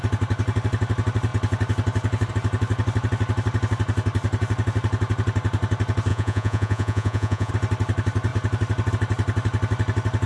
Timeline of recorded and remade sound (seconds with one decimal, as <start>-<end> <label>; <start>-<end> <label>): 0.0-6.1 recorded; 6.1-7.5 remade; 7.5-10.3 recorded